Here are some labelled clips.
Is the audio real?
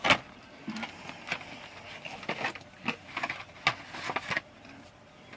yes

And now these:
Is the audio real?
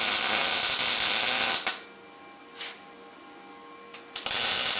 yes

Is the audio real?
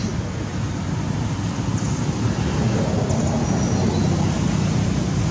yes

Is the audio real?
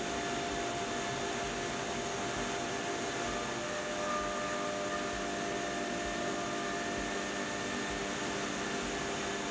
yes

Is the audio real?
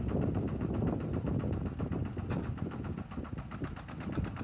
yes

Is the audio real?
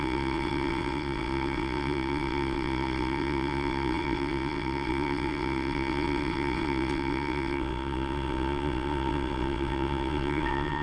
no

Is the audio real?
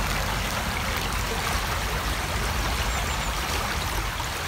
yes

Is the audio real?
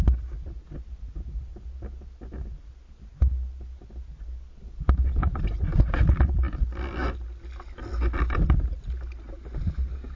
yes